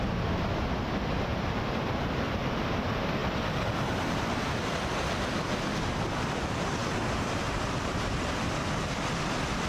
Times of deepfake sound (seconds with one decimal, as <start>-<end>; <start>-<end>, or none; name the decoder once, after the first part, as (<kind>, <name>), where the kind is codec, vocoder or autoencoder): none